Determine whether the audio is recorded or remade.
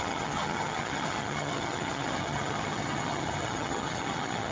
remade